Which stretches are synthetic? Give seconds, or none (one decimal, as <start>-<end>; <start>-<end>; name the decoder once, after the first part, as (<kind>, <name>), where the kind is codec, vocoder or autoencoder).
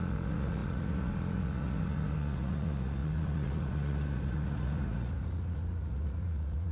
0.0-6.7 (vocoder, Vocos)